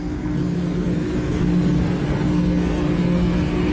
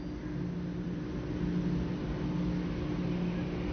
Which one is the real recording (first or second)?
second